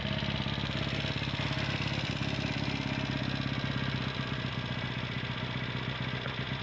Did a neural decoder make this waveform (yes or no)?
no